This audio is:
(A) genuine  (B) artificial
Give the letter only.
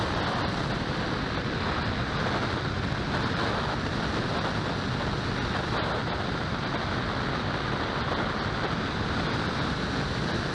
A